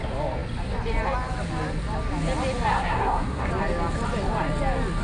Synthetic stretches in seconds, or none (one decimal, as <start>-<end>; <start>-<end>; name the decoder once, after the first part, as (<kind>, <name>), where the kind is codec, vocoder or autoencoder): 2.7-3.5 (codec, SNAC)